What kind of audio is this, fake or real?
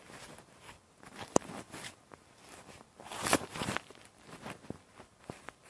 fake